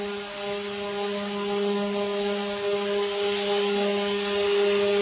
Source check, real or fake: real